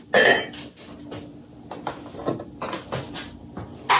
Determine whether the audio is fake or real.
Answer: real